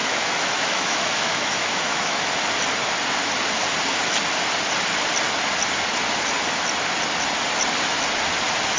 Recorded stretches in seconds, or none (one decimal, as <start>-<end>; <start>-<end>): 2.3-8.8